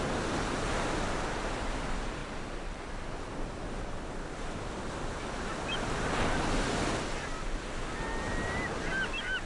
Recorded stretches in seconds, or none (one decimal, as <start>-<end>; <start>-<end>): 0.0-2.2; 2.8-9.5